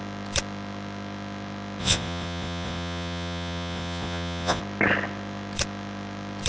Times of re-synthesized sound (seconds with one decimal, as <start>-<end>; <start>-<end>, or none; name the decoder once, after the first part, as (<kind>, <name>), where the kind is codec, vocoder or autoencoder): 1.8-4.6 (vocoder, Vocos)

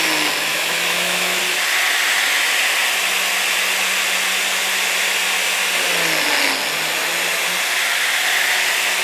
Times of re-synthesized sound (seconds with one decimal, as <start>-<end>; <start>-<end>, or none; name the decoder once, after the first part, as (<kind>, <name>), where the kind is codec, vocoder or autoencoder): 0.5-1.4 (autoencoder, DAC-VAE)

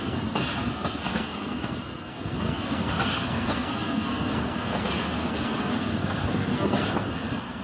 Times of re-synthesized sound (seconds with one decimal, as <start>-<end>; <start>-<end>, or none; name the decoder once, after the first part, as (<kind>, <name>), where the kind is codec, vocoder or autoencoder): 0.0-7.6 (codec, SNAC)